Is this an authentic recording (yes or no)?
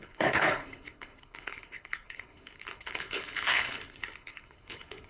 no